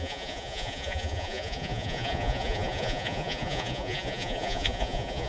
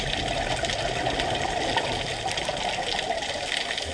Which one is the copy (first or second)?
first